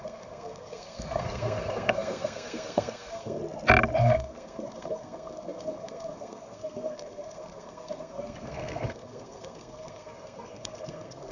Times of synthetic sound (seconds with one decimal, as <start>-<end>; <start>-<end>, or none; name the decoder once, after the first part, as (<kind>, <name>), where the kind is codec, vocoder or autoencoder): 0.0-3.4 (codec, SNAC); 4.0-11.3